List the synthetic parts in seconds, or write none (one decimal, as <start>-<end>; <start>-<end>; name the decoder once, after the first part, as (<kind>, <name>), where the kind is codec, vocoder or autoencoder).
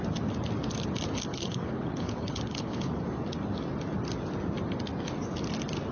1.3-2.9 (codec, HILCodec)